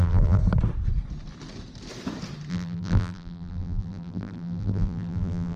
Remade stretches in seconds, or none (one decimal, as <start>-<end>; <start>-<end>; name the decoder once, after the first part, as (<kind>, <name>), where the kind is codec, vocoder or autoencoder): 0.0-0.4 (vocoder, BigVGAN v2); 2.5-5.6